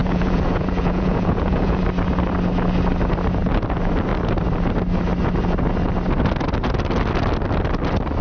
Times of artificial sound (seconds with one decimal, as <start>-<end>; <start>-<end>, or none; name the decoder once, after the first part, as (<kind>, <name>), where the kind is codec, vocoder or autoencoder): 0.0-1.8 (vocoder, Vocos)

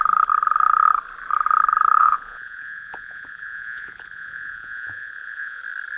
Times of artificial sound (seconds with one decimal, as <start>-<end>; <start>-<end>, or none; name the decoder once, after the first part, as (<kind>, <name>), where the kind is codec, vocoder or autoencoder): 2.0-5.6 (vocoder, Vocos)

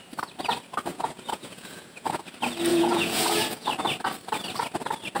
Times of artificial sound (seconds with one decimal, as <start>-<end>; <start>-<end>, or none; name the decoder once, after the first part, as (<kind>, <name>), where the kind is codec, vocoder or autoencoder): 0.9-2.2 (vocoder, Vocos); 2.7-3.7

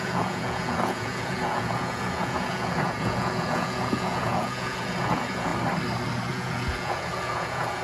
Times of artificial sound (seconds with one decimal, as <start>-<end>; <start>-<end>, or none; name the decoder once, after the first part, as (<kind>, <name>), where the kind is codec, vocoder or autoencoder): 0.0-5.5 (vocoder, Vocos); 6.3-7.8